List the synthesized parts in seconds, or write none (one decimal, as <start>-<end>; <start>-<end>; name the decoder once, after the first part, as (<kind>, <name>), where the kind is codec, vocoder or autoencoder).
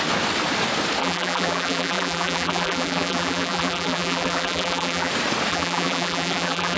1.0-5.1 (vocoder, BigVGAN v2); 5.5-6.8